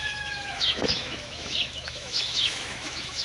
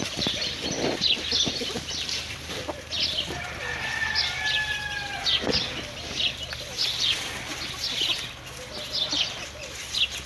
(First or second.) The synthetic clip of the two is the first